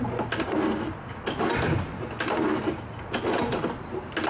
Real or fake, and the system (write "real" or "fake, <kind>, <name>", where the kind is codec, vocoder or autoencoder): real